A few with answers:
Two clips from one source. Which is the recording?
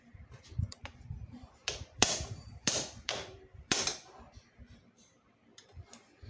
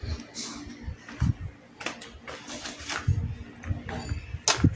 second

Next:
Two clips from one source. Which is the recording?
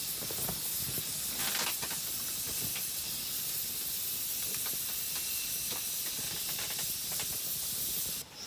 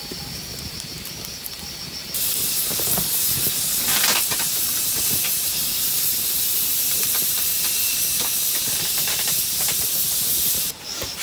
first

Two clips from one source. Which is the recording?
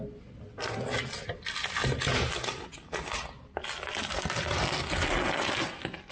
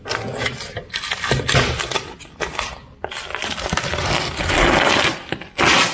first